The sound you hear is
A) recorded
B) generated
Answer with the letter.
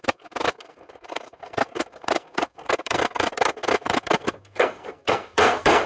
B